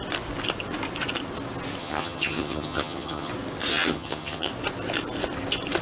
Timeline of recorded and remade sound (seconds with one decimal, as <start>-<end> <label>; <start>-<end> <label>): 0.0-1.8 recorded; 1.8-3.3 remade; 3.3-3.7 recorded; 3.7-4.5 remade; 4.5-5.8 recorded